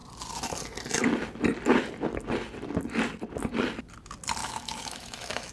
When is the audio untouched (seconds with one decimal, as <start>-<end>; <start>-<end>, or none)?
0.0-4.4